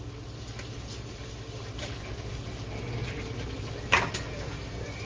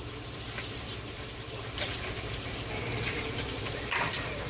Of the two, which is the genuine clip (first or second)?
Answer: first